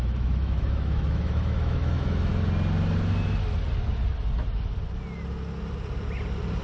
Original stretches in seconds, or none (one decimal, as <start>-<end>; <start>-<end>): 2.3-6.6